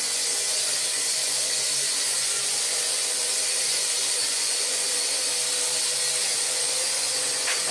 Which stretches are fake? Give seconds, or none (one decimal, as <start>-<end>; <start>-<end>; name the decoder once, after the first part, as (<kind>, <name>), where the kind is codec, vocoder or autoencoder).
0.0-5.3 (vocoder, Vocos); 6.3-7.7